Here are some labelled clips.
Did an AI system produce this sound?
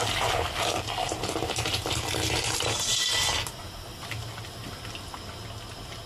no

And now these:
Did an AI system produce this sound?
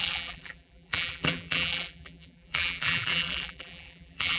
yes